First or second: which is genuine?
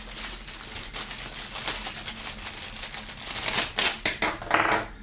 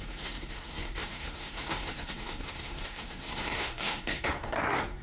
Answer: first